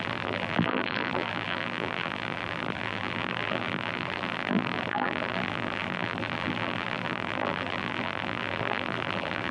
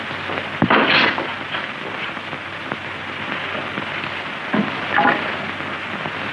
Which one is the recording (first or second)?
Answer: second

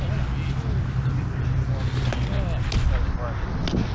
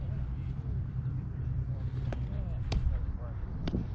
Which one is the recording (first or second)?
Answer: first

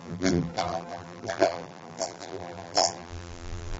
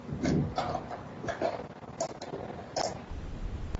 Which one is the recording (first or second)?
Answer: second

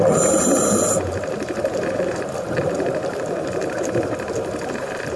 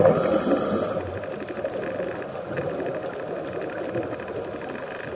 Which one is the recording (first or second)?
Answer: second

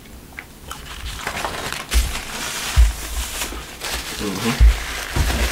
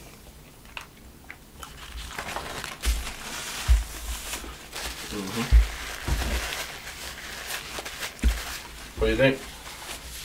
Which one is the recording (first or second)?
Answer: second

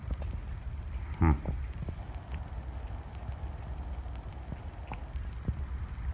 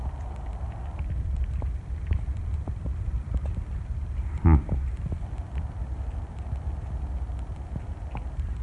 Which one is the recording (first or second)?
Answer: first